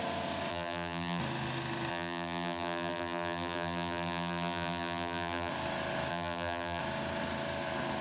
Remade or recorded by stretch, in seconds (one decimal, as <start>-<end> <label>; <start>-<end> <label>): 0.0-0.5 recorded; 0.5-1.2 remade; 1.2-1.9 recorded; 1.9-5.5 remade; 5.5-6.1 recorded; 6.1-6.8 remade; 6.8-8.0 recorded